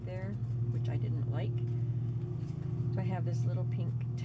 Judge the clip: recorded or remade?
recorded